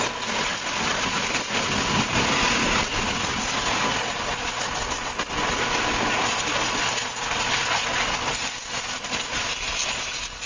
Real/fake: real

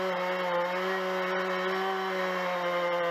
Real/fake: real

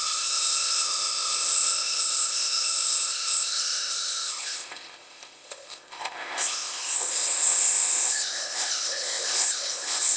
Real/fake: fake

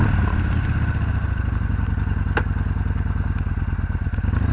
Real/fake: real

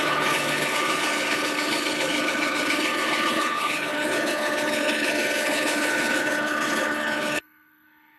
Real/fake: fake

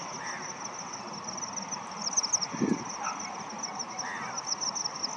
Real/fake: real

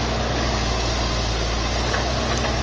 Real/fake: real